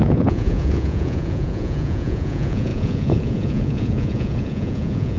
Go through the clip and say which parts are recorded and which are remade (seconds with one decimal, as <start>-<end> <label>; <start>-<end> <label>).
0.0-5.2 remade